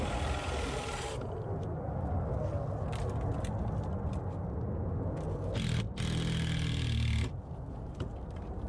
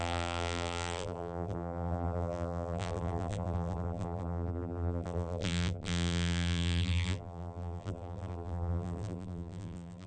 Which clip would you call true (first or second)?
first